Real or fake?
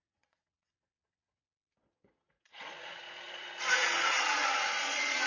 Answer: fake